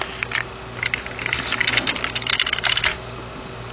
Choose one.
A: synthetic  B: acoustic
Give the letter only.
B